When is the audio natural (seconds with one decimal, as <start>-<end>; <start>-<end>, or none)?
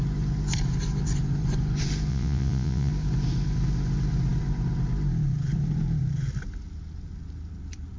0.0-2.1; 2.9-8.0